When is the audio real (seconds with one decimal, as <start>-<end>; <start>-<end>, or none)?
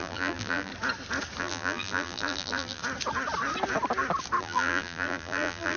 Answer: 0.7-1.4; 2.8-4.4